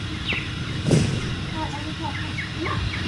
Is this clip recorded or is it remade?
recorded